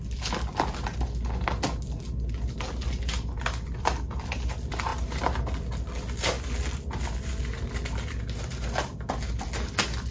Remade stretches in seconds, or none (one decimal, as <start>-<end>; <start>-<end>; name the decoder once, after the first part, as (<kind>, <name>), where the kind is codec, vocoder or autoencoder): none